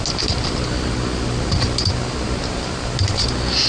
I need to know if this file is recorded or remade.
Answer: recorded